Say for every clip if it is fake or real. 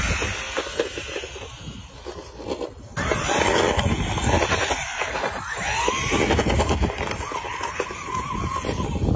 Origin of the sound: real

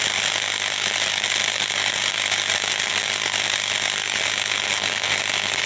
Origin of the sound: real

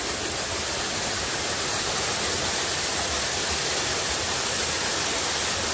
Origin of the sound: real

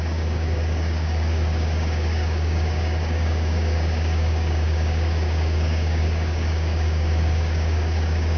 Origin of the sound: fake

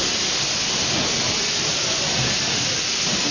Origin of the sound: real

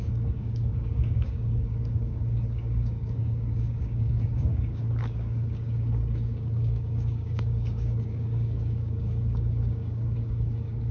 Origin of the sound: fake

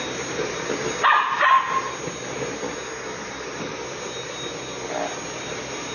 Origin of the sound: real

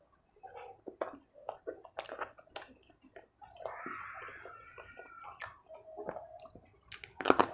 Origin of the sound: real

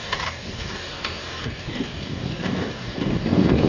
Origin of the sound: fake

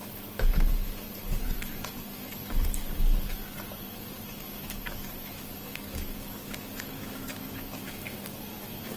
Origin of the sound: fake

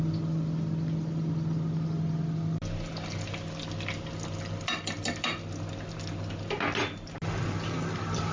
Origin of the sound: real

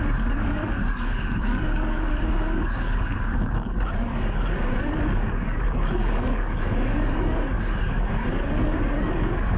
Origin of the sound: fake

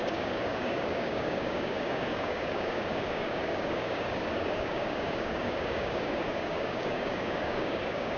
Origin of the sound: fake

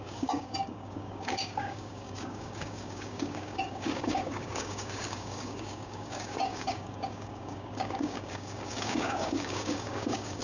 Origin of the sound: fake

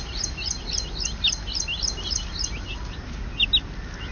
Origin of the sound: real